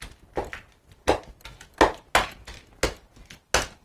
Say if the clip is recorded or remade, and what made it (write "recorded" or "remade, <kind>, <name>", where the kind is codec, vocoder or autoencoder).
recorded